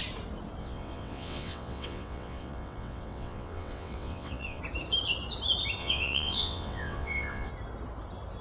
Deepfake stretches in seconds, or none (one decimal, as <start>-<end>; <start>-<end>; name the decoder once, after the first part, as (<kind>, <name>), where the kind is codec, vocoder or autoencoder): 0.6-4.6 (vocoder, WaveNeXt); 5.8-7.5